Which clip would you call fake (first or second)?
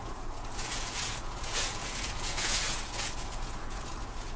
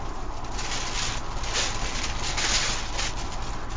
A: first